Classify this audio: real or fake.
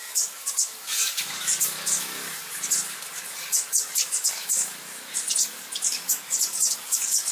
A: fake